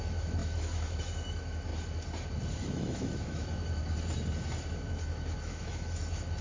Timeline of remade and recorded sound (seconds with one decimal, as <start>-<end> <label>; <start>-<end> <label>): 0.0-1.7 remade; 1.7-2.6 recorded; 2.6-3.8 remade; 3.8-4.9 recorded; 4.9-6.4 remade